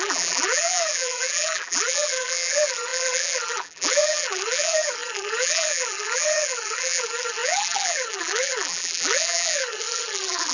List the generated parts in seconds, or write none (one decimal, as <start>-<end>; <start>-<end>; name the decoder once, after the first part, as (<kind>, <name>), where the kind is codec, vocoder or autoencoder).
0.0-10.5 (vocoder, BigVGAN v2)